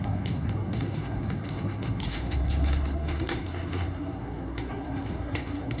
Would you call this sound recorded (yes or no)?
no